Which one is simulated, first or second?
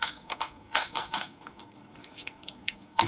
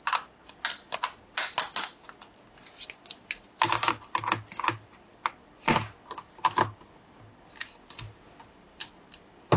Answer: first